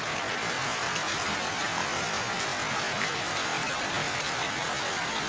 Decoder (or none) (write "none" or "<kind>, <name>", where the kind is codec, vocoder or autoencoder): none